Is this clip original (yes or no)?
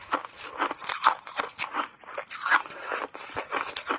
yes